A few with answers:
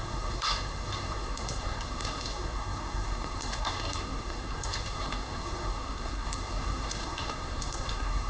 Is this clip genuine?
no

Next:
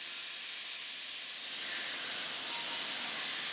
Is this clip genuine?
yes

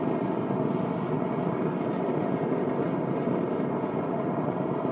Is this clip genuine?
yes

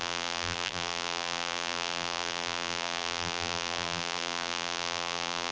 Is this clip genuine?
no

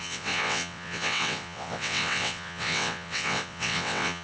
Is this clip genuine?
no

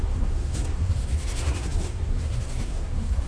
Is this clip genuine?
no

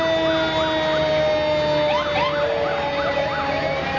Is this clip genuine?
yes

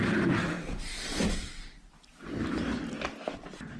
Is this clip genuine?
yes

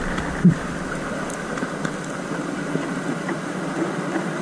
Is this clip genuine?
yes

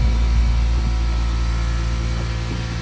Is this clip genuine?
yes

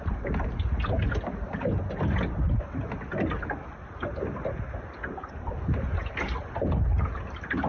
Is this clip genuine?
yes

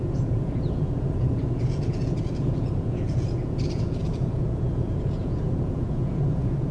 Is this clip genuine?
no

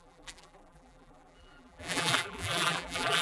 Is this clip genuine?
no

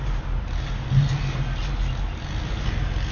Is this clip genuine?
yes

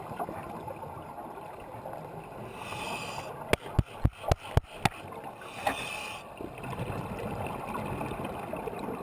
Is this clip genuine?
yes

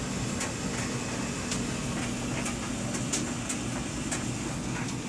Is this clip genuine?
yes